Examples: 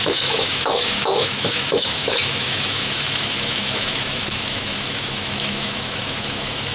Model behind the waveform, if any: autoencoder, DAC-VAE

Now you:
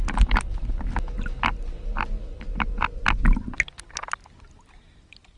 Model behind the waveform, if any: none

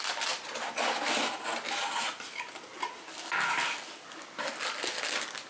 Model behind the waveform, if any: none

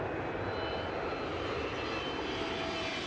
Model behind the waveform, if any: none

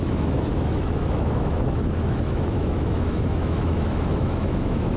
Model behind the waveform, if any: autoencoder, DAC-VAE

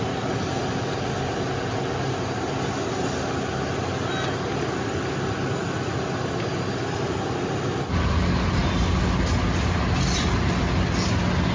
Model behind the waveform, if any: none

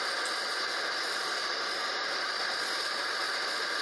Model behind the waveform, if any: none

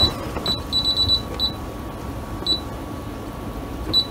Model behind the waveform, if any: none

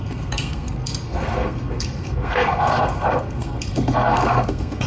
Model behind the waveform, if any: codec, SNAC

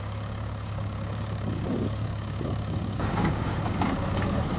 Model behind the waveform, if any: codec, DAC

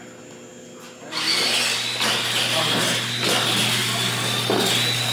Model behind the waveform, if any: none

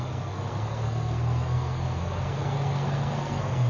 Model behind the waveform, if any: codec, SNAC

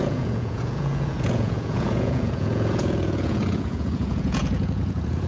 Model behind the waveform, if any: vocoder, Vocos